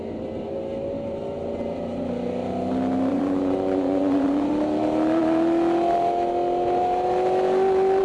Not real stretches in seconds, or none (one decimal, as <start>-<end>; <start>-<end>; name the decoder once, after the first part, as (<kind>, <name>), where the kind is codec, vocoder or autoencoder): 3.1-4.5 (vocoder, Vocos)